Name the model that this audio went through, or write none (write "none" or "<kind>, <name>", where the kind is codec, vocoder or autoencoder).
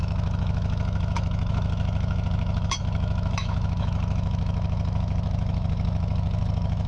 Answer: autoencoder, DAC-VAE